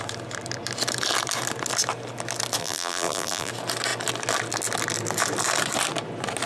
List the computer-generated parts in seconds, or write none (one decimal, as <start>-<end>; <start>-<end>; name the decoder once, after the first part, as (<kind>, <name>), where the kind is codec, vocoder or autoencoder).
2.6-3.5 (vocoder, BigVGAN v2)